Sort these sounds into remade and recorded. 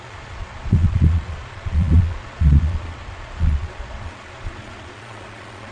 remade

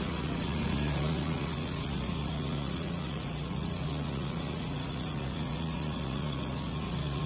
remade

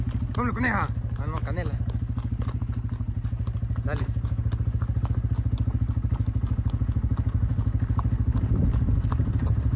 recorded